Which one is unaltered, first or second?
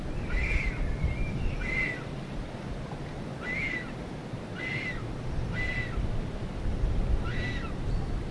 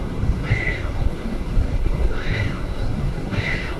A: first